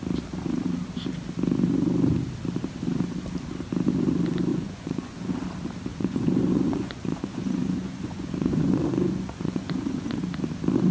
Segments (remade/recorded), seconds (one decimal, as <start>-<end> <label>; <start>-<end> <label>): 0.0-4.5 recorded; 4.5-5.3 remade; 5.3-5.9 recorded; 5.9-10.2 remade; 10.2-10.9 recorded